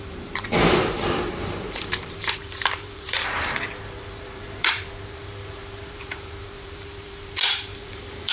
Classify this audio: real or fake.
fake